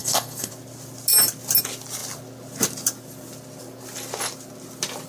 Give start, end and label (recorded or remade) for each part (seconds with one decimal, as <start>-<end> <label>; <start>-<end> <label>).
0.0-0.5 remade; 0.5-5.1 recorded